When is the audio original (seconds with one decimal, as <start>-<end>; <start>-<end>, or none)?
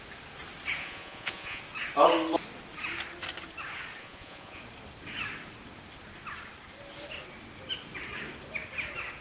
0.0-0.8; 1.6-4.0; 4.6-9.2